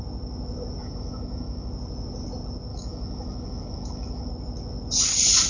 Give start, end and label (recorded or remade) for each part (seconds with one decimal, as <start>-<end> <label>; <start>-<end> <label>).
0.0-0.8 recorded; 0.8-1.7 remade; 1.7-2.7 recorded; 2.7-4.3 remade; 4.3-5.5 recorded